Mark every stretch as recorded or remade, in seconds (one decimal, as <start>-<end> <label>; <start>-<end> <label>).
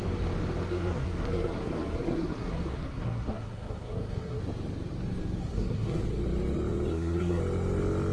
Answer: 0.0-0.7 recorded; 0.7-4.4 remade; 4.4-5.4 recorded; 5.4-6.0 remade; 6.0-6.9 recorded; 6.9-7.4 remade; 7.4-8.1 recorded